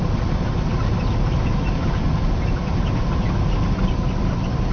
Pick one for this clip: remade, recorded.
recorded